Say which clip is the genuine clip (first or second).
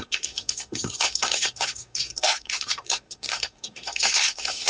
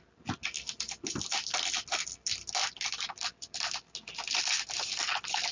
second